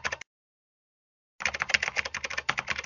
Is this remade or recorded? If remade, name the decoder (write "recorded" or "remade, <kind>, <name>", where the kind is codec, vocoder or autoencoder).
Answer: recorded